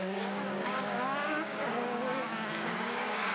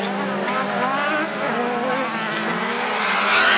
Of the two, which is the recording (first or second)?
second